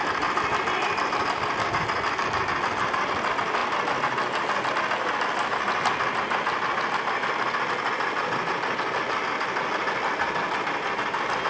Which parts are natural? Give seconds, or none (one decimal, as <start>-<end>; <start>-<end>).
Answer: 0.0-11.5